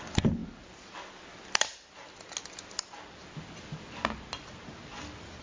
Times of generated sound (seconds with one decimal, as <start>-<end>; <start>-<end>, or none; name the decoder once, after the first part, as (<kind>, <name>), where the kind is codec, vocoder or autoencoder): none